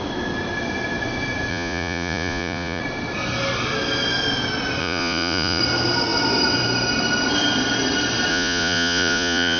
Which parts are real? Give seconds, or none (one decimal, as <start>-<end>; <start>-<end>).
0.0-1.5; 2.8-4.8; 5.6-8.3